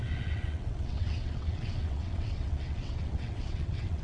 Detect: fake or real fake